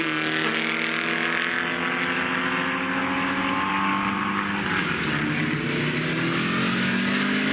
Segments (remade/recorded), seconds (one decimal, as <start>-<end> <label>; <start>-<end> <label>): 0.0-7.5 recorded

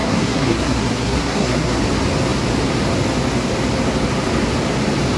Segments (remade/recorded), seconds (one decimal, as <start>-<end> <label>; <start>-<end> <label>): 0.0-1.8 remade; 1.8-5.2 recorded

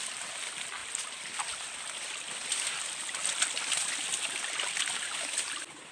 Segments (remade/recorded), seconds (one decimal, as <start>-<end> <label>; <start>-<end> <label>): 0.0-5.9 recorded

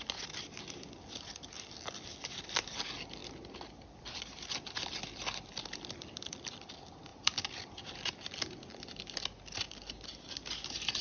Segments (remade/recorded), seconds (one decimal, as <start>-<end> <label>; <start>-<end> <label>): 0.0-11.0 recorded

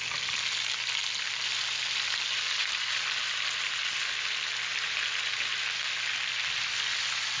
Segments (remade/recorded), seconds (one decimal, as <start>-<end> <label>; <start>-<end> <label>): 0.0-7.4 recorded

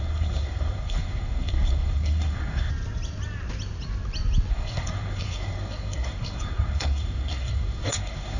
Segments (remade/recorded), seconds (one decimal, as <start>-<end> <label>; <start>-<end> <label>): 0.0-2.7 remade; 2.7-4.5 recorded; 4.5-8.4 remade

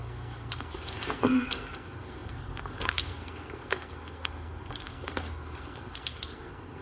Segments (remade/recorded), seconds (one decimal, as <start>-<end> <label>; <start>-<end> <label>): 0.0-6.8 remade